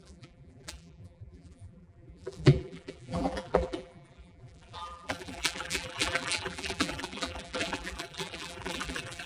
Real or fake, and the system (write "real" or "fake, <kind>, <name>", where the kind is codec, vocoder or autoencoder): fake, vocoder, BigVGAN v2